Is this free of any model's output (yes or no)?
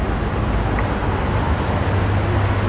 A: yes